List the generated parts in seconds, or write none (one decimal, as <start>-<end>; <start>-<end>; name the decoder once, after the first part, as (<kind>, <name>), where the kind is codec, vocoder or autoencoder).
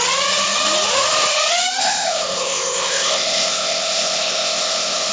1.8-5.1 (codec, ZipCodec)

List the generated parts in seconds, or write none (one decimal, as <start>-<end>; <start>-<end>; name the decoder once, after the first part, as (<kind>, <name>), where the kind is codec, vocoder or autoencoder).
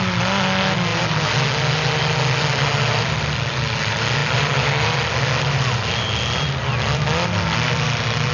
none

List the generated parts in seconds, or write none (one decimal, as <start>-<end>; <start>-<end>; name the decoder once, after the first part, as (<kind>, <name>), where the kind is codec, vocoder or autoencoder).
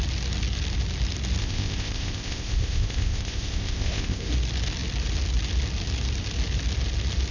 1.4-4.3 (codec, ZipCodec)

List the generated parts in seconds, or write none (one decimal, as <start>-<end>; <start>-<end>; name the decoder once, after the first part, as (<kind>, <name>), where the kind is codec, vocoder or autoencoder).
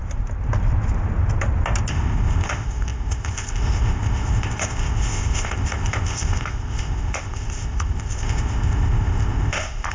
1.9-9.9 (codec, ZipCodec)